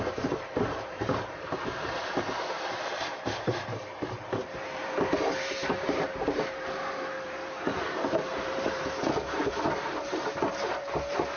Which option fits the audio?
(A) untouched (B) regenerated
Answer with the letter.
B